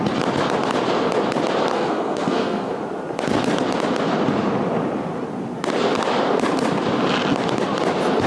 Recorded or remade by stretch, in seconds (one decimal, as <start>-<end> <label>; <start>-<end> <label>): 0.0-1.7 recorded; 1.7-2.7 remade; 2.7-8.3 recorded